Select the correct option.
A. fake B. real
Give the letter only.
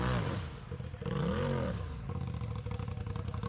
B